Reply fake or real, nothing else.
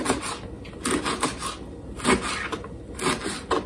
real